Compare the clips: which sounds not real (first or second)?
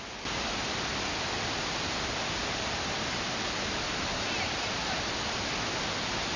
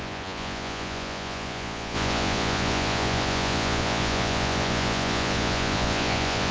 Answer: second